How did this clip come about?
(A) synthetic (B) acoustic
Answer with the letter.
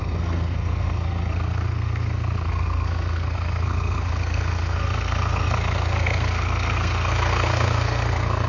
A